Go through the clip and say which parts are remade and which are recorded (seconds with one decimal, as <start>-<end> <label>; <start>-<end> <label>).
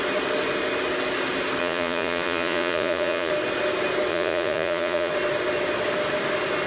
0.0-1.6 recorded; 1.6-3.3 remade; 3.3-4.1 recorded; 4.1-5.1 remade; 5.1-6.7 recorded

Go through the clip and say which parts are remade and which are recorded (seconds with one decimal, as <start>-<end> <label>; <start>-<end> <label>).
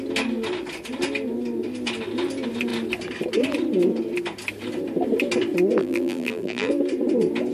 0.0-5.8 recorded; 5.8-6.7 remade; 6.7-7.5 recorded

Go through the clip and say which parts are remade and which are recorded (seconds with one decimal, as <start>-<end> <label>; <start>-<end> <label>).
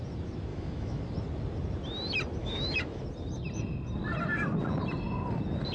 0.0-0.5 recorded; 0.5-1.0 remade; 1.0-2.4 recorded; 2.4-3.0 remade; 3.0-5.7 recorded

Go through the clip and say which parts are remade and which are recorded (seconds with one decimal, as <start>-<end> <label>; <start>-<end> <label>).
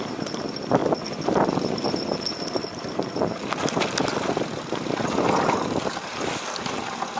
0.0-7.2 recorded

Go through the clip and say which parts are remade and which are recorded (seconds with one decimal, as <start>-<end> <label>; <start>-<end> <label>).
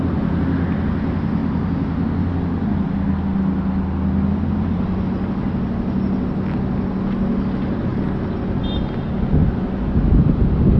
0.0-10.8 recorded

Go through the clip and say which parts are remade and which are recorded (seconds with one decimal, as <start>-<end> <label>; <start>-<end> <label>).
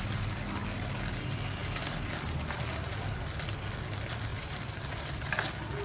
0.0-4.3 recorded; 4.3-5.3 remade; 5.3-5.8 recorded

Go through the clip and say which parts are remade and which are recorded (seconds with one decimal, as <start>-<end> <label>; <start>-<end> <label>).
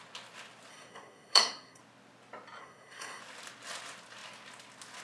0.0-0.7 recorded; 0.7-1.8 remade; 1.8-2.6 recorded; 2.6-3.2 remade; 3.2-5.0 recorded